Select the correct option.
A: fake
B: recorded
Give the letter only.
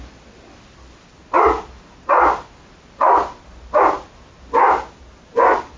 B